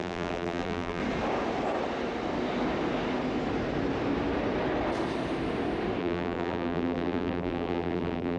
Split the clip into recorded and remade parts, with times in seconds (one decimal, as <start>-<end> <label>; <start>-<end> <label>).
0.0-1.0 remade; 1.0-6.0 recorded; 6.0-8.4 remade